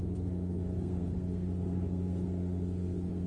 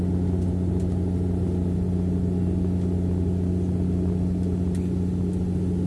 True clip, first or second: second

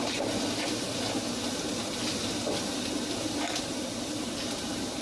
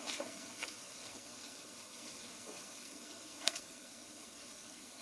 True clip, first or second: first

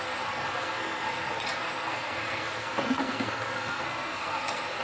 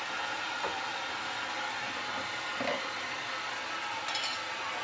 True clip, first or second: second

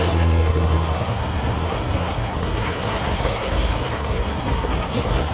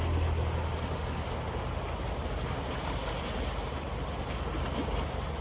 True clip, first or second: second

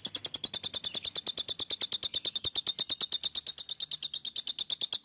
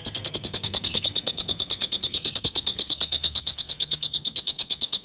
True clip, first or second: first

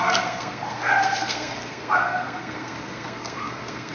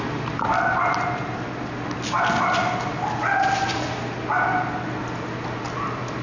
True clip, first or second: second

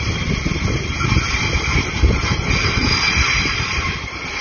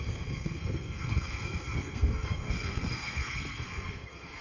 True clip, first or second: first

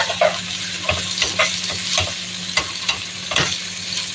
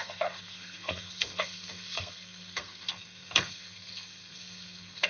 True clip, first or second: first